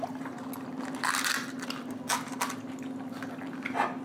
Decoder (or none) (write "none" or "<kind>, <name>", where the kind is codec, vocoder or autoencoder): none